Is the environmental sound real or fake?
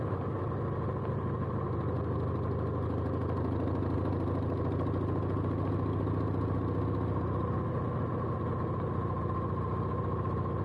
real